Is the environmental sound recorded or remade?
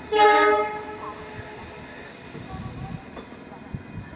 recorded